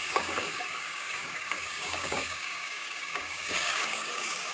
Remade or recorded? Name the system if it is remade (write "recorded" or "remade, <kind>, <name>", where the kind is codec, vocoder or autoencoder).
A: remade, codec, DAC